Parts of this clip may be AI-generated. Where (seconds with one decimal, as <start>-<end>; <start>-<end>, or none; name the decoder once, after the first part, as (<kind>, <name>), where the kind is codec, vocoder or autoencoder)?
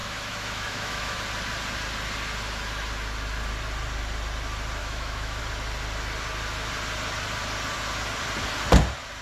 0.0-1.2 (autoencoder, DAC-VAE); 4.8-5.4